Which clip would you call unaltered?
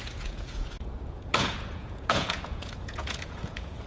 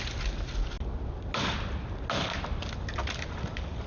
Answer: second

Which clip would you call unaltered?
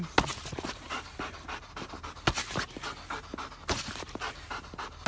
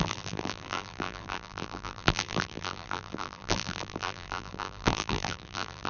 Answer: first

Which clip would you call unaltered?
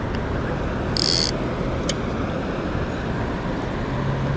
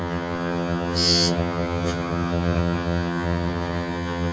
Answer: first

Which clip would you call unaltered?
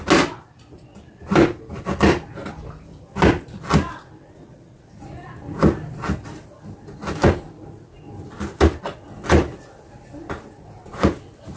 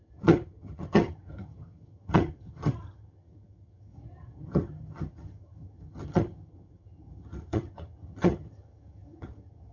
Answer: first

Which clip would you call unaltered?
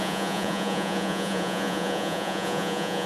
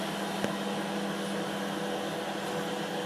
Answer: second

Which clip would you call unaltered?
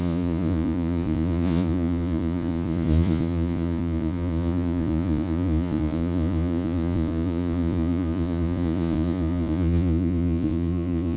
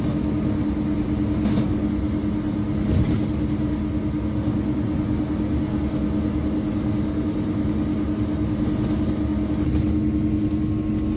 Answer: second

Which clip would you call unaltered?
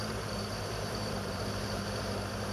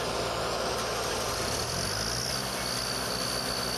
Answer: second